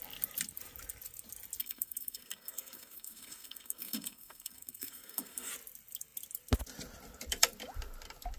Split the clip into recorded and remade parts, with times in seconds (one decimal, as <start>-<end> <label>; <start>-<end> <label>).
0.0-1.6 recorded; 1.6-5.5 remade; 5.5-8.4 recorded